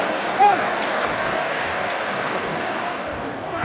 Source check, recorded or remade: remade